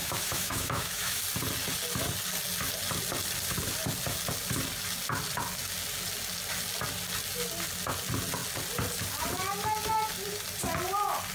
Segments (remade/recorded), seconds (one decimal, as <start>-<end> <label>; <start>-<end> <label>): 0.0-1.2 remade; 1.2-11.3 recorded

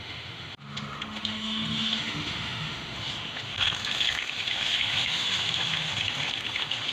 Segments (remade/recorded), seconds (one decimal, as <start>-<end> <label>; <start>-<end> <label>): 0.0-6.9 remade

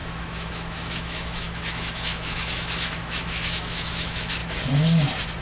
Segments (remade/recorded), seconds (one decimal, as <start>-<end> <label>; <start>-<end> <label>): 0.0-4.4 remade; 4.4-5.4 recorded

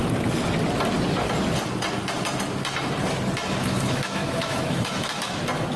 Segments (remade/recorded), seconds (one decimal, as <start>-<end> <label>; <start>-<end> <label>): 0.0-3.6 recorded; 3.6-5.3 remade; 5.3-5.8 recorded

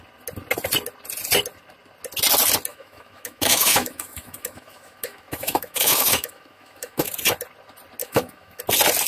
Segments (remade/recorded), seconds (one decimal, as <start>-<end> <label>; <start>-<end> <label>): 0.0-2.7 recorded; 2.7-7.1 remade; 7.1-8.0 recorded; 8.0-8.6 remade; 8.6-9.1 recorded

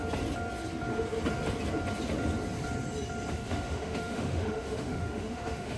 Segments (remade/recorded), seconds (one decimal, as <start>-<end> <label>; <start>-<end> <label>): 0.0-3.3 recorded; 3.3-5.8 remade